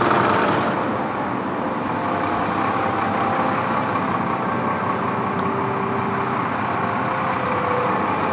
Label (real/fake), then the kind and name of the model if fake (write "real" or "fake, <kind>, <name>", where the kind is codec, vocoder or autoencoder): real